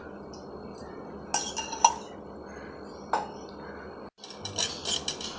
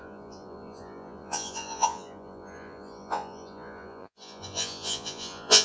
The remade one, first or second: second